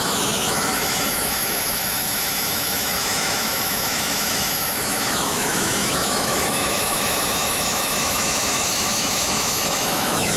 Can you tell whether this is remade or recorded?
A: remade